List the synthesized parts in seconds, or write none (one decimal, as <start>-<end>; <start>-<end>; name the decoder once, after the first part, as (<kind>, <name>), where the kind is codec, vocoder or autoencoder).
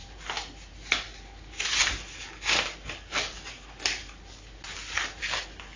none